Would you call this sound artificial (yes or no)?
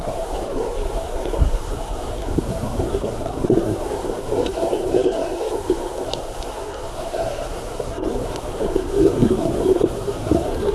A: yes